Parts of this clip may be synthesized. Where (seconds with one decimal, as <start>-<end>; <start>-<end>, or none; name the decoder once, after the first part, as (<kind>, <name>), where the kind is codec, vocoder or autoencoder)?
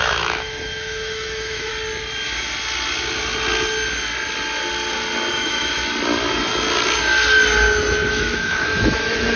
0.0-1.7 (autoencoder, DAC-VAE); 5.3-5.8; 8.1-9.4